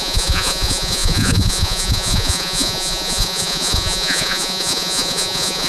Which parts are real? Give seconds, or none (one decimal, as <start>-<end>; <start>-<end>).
none

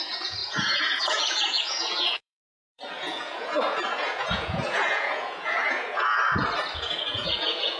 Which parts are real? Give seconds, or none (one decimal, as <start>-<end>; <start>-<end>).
6.2-6.7

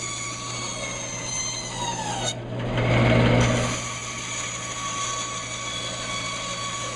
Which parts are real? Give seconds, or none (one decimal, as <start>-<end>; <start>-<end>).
0.0-7.0